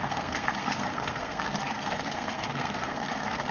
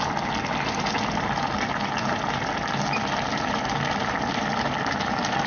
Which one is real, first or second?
second